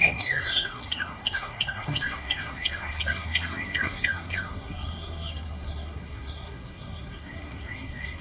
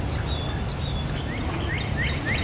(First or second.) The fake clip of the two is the first